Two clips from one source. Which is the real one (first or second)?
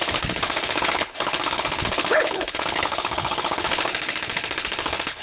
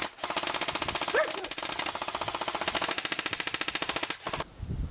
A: second